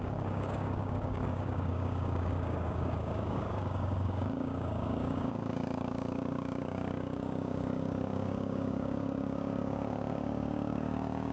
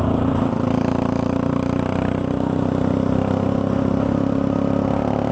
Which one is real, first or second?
second